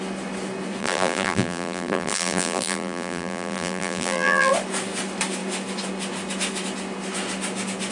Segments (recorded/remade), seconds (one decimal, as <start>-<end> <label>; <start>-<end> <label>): 0.0-0.8 recorded; 0.8-4.5 remade; 4.5-7.9 recorded